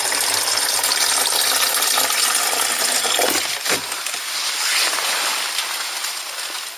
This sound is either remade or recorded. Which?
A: recorded